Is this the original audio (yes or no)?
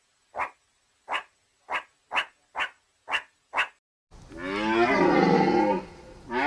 yes